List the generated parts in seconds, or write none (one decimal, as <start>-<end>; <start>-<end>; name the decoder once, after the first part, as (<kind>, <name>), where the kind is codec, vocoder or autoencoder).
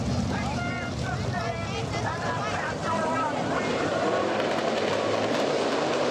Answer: 3.7-6.1 (vocoder, BigVGAN v2)